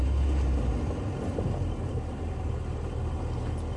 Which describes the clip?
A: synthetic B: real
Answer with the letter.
B